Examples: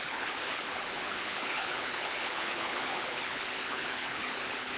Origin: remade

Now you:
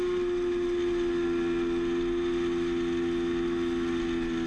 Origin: recorded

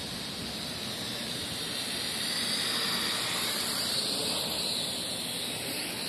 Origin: recorded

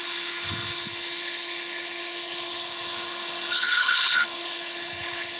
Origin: remade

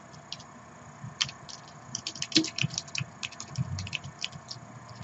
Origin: recorded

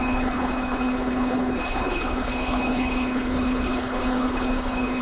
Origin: remade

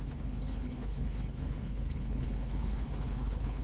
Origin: remade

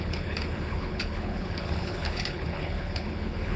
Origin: remade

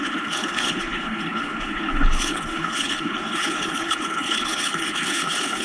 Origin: remade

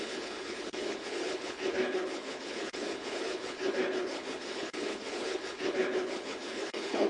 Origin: remade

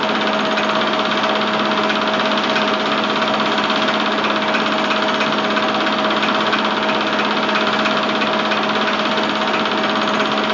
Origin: recorded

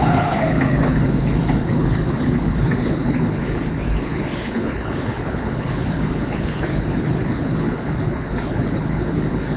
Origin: remade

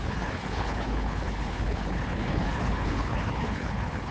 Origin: remade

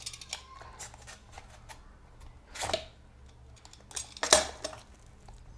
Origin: recorded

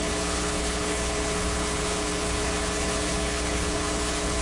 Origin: remade